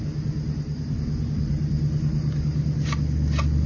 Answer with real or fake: real